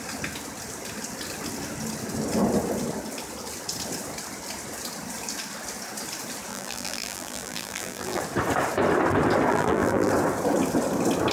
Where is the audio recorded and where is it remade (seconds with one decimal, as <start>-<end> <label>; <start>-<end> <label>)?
0.0-6.5 recorded; 6.5-8.2 remade; 8.2-9.5 recorded; 9.5-10.1 remade; 10.1-11.3 recorded